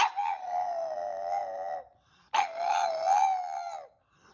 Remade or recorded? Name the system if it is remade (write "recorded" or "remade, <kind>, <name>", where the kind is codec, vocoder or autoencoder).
recorded